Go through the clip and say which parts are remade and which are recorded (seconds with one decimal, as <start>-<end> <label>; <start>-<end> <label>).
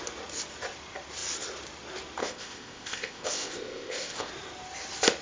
0.0-2.2 recorded; 2.2-4.3 remade; 4.3-5.2 recorded